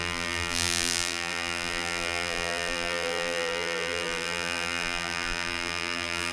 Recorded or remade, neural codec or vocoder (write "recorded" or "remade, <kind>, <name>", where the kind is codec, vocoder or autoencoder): remade, vocoder, BigVGAN v2